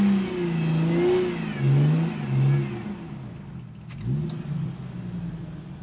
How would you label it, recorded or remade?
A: recorded